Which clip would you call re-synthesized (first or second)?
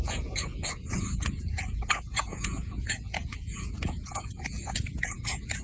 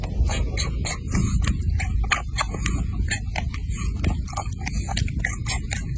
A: first